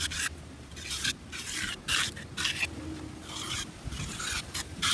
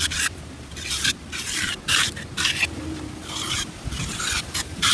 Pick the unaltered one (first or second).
first